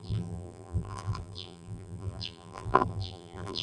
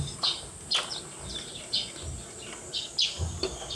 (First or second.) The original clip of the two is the second